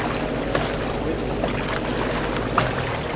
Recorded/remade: recorded